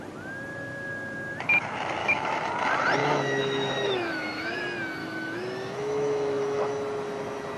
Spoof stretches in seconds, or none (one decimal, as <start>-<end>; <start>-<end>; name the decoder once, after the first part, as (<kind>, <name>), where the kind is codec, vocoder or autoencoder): 2.0-2.5 (autoencoder, DAC-VAE); 3.0-4.6; 5.0-6.7